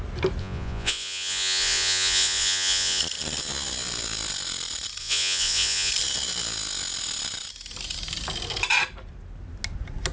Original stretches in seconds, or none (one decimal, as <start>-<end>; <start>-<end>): 0.0-0.4; 3.0-5.0; 5.9-10.1